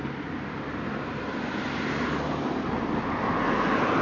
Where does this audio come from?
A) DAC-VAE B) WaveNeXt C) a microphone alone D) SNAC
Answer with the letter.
C